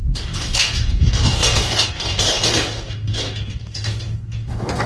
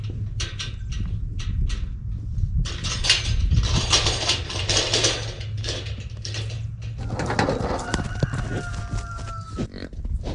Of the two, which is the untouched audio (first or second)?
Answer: second